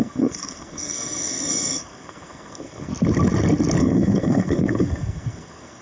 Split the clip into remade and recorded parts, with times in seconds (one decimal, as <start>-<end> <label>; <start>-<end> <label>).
0.0-2.9 remade; 2.9-3.8 recorded; 3.8-5.8 remade